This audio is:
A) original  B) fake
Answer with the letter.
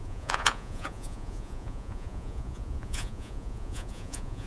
B